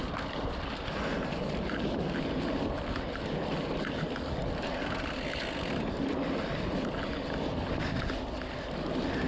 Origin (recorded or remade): recorded